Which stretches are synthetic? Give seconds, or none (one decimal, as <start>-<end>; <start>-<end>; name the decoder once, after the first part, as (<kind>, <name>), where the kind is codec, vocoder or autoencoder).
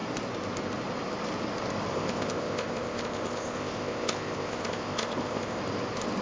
1.9-5.6 (codec, ZipCodec)